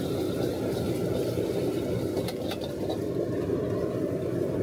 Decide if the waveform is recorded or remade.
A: recorded